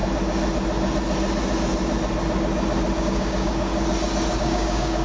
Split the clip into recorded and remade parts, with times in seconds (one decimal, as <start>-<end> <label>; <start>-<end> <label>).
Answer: 0.0-3.0 recorded; 3.0-3.7 remade; 3.7-4.4 recorded; 4.4-5.0 remade